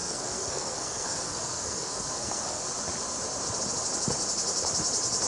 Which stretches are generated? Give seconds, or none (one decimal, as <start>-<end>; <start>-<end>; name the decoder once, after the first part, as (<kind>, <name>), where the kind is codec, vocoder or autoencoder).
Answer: 0.0-2.6 (codec, SNAC)